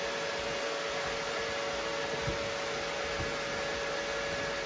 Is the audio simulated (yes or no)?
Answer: no